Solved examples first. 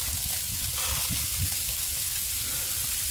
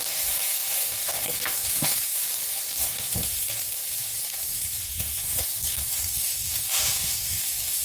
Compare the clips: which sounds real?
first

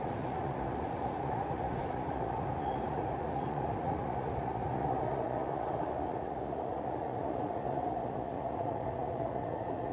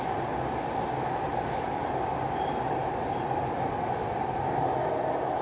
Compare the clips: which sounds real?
second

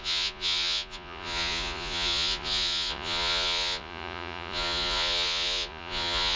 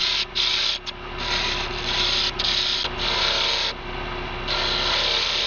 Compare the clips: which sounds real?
second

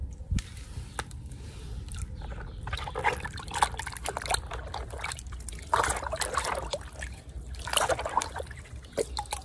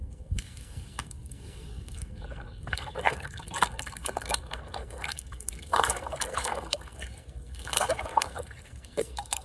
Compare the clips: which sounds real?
first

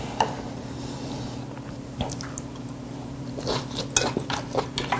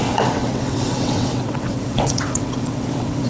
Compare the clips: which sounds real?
first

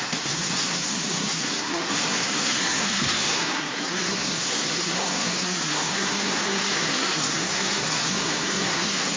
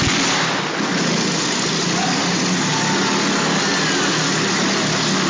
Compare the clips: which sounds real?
second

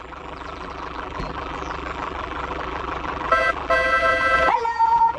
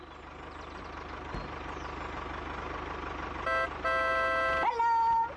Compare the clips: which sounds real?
second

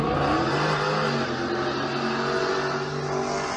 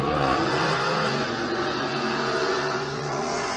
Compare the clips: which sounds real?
first